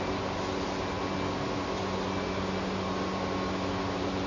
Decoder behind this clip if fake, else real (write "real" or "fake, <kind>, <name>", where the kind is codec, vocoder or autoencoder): real